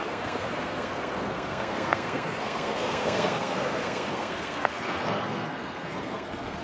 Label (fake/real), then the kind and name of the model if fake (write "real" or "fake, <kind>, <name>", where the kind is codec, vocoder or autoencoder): fake, codec, SNAC